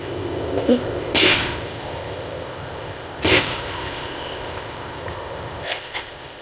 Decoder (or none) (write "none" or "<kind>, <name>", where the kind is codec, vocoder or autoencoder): codec, ZipCodec